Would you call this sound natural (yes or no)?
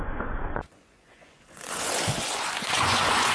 no